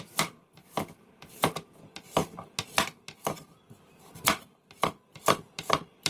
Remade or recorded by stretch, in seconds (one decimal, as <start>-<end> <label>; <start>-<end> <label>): 0.0-0.6 remade; 0.6-1.3 recorded; 1.3-6.1 remade